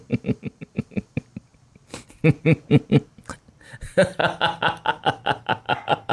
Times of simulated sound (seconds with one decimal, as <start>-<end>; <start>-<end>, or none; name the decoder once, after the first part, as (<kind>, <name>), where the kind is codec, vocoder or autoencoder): 0.0-4.2 (vocoder, BigVGAN v2); 4.9-6.1